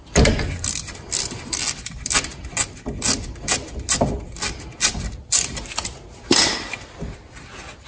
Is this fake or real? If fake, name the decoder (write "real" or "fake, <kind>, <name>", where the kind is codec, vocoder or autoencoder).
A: real